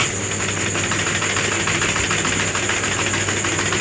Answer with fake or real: real